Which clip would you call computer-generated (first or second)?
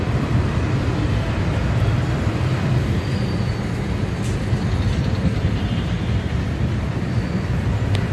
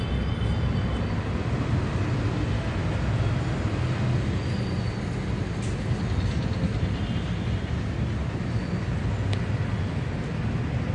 first